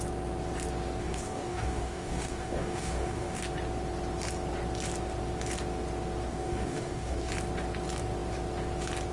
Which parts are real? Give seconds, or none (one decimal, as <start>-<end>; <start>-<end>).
0.0-1.0; 3.4-6.3; 7.3-9.1